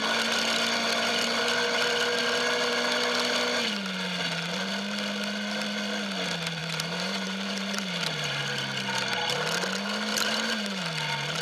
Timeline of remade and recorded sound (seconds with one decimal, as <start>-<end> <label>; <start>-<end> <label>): 0.0-6.6 recorded; 6.6-8.4 remade; 8.4-10.1 recorded; 10.1-10.8 remade; 10.8-11.4 recorded